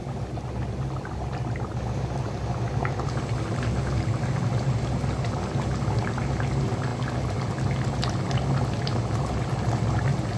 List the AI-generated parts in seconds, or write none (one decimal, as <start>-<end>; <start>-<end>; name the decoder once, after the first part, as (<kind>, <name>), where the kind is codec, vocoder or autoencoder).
none